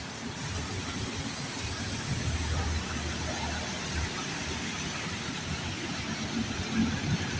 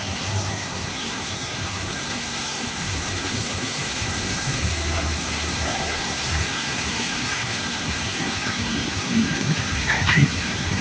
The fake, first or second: second